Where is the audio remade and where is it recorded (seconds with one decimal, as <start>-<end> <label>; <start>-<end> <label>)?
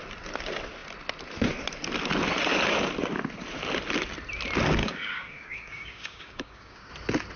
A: 0.0-4.8 recorded; 4.8-6.9 remade; 6.9-7.4 recorded